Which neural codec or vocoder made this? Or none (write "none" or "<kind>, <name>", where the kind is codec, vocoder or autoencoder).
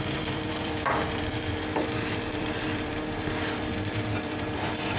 vocoder, BigVGAN v2